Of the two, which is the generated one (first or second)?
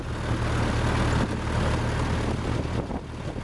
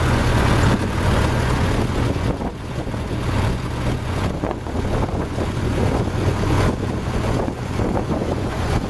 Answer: second